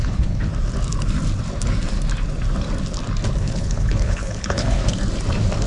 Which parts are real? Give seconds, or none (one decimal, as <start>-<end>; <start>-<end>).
0.5-3.4; 4.8-5.7